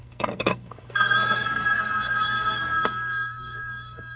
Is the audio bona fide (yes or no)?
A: no